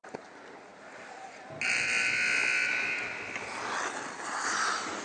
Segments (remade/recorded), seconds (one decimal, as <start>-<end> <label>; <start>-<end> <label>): 0.0-5.0 recorded